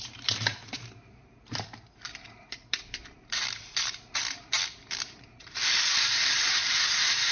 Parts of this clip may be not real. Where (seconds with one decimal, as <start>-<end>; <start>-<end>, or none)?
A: 0.0-7.3